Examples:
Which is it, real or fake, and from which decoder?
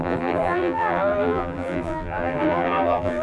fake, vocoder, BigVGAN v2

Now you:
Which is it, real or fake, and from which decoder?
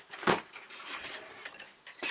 fake, vocoder, BigVGAN v2